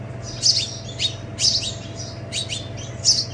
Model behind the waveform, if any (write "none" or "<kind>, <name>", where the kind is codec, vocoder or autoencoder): none